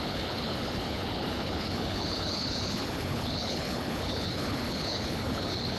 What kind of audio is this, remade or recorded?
remade